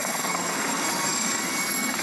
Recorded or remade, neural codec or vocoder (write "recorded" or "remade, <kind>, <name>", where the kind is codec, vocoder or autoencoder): remade, codec, SNAC